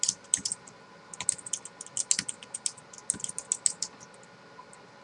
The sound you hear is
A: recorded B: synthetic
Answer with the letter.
A